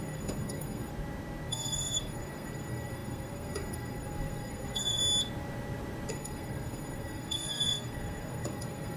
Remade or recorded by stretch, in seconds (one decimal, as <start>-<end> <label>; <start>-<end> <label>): 0.0-0.9 remade; 0.9-1.5 recorded; 1.5-5.0 remade; 5.0-6.1 recorded; 6.1-9.0 remade

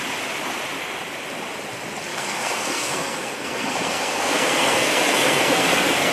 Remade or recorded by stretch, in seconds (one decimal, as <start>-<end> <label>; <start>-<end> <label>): 0.0-2.1 recorded; 2.1-6.1 remade

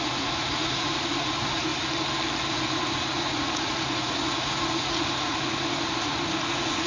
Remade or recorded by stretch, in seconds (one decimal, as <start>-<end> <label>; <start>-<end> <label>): 0.0-1.7 remade; 1.7-2.5 recorded; 2.5-6.9 remade

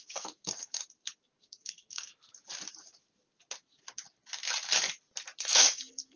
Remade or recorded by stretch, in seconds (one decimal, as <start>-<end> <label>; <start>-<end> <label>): 0.0-0.8 remade; 0.8-1.4 recorded; 1.4-2.1 remade; 2.1-5.4 recorded; 5.4-6.2 remade

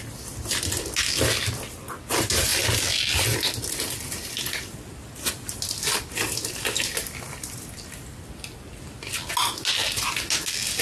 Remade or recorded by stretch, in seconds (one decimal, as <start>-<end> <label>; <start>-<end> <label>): 0.0-10.8 recorded

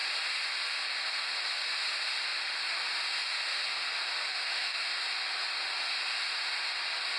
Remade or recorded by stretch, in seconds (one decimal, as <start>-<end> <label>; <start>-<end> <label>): 0.0-4.2 recorded; 4.2-4.9 remade; 4.9-7.2 recorded

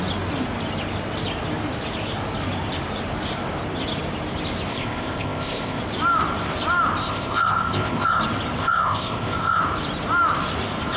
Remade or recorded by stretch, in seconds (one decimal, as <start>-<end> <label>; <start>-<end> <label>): 0.0-4.7 recorded; 4.7-5.8 remade; 5.8-7.0 recorded; 7.0-8.2 remade; 8.2-8.6 recorded; 8.6-9.6 remade; 9.6-11.0 recorded

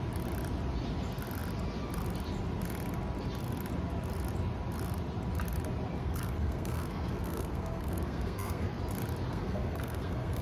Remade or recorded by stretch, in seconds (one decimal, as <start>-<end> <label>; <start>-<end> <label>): 0.0-6.0 recorded; 6.0-8.8 remade; 8.8-9.3 recorded; 9.3-10.4 remade